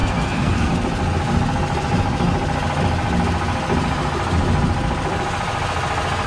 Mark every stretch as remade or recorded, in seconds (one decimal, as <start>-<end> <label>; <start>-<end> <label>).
0.0-0.7 remade; 0.7-6.3 recorded